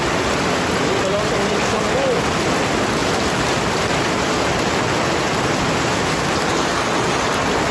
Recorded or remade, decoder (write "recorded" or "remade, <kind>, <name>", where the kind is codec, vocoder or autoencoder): recorded